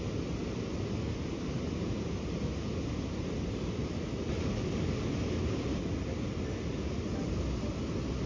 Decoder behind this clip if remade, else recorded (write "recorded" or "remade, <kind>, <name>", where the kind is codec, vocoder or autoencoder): recorded